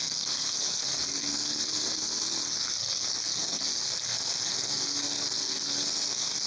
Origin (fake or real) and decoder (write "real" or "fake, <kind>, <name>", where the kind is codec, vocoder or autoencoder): fake, codec, SNAC